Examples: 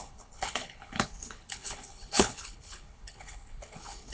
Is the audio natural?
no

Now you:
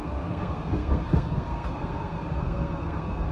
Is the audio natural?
no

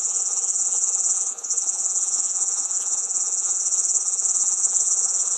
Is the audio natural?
no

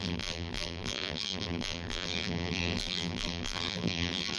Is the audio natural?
no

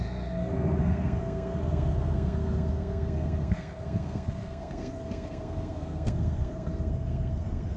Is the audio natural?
no